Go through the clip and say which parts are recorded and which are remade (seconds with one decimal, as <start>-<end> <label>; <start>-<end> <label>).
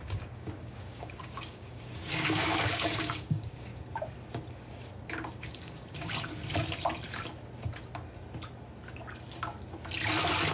0.0-3.7 remade; 3.7-5.3 recorded; 5.3-6.3 remade; 6.3-10.5 recorded